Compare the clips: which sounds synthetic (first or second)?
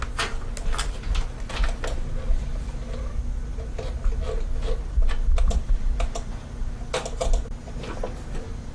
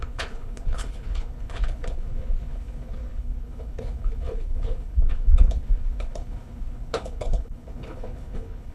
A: second